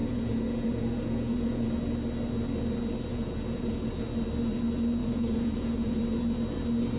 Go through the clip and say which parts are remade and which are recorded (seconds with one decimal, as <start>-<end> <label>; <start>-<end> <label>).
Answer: 0.0-1.7 remade; 1.7-3.1 recorded; 3.1-3.9 remade; 3.9-5.0 recorded; 5.0-6.0 remade; 6.0-7.0 recorded